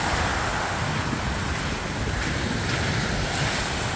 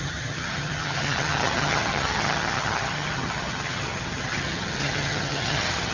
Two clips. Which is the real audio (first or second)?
first